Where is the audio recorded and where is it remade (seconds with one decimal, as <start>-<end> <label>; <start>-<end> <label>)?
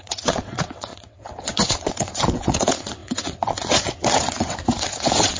0.0-5.4 remade